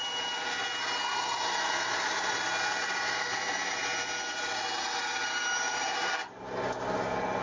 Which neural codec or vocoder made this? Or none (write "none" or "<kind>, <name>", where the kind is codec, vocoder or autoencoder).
none